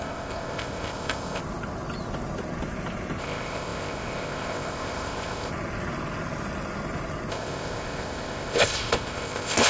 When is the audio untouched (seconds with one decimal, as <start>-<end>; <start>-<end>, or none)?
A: 1.4-3.2; 5.5-7.3